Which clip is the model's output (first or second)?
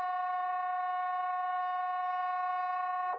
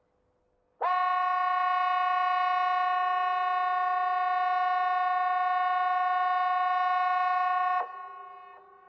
first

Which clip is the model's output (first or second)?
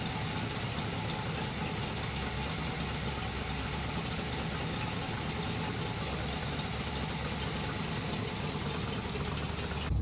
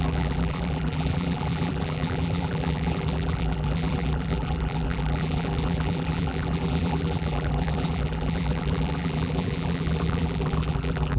second